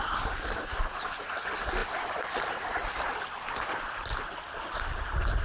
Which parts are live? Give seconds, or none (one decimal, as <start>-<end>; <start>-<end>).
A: 0.0-5.4